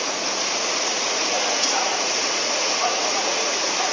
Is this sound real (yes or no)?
no